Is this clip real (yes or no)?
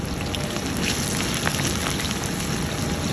yes